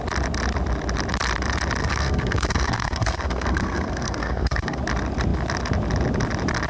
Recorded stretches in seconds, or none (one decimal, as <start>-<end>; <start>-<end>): 0.0-1.8; 4.8-6.7

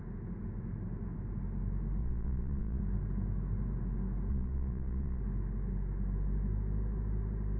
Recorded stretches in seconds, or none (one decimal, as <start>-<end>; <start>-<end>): 0.0-2.0; 2.8-4.3; 5.2-7.6

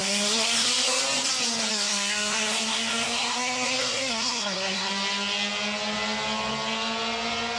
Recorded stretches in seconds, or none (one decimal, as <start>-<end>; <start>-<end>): 1.0-1.7; 4.9-7.6